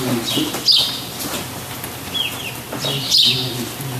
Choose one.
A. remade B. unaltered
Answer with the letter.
B